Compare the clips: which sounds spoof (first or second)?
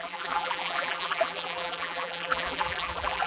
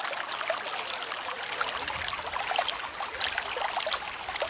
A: first